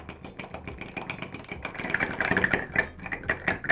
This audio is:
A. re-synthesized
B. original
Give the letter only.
B